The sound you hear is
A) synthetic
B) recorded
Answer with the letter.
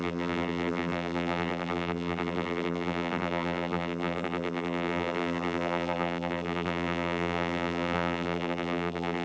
A